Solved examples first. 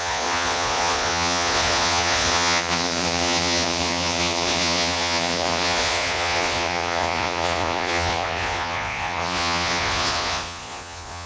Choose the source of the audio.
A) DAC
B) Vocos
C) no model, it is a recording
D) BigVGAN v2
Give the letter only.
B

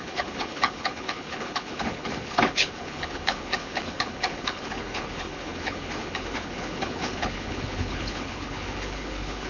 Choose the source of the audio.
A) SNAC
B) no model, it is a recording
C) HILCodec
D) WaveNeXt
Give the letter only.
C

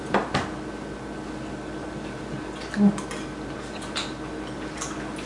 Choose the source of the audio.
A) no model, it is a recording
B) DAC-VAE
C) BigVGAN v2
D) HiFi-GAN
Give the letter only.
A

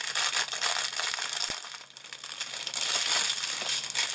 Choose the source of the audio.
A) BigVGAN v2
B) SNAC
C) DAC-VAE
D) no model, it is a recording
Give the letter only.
D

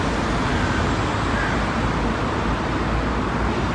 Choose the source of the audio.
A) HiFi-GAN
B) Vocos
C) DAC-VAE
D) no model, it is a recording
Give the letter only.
D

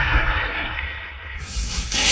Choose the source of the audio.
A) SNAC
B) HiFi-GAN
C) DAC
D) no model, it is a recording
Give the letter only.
A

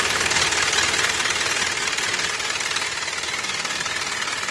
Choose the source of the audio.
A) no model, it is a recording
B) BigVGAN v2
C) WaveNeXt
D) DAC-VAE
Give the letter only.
A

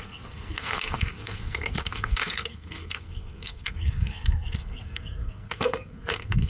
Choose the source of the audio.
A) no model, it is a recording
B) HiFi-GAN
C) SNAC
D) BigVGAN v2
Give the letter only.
C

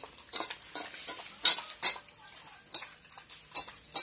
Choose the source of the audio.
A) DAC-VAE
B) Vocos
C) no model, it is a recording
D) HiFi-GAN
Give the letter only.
C